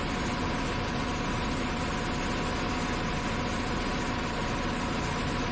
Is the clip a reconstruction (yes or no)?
no